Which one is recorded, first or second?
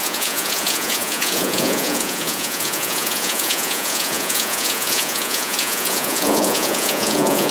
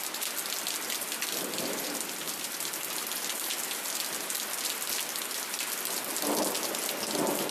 second